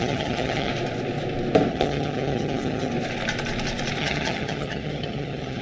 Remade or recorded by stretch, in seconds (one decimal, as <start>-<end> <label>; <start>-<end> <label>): 0.0-0.7 remade; 0.7-1.7 recorded; 1.7-2.9 remade; 2.9-4.0 recorded; 4.0-5.6 remade